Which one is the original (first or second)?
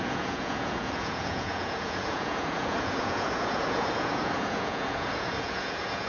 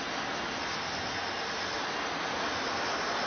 second